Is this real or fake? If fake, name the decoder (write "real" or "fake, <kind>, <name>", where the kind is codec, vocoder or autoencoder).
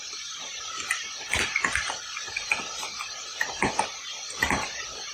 real